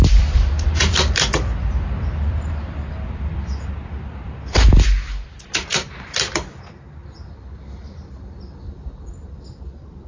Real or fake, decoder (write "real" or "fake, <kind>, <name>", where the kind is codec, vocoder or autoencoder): fake, vocoder, BigVGAN v2